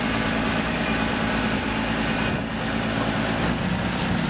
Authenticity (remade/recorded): remade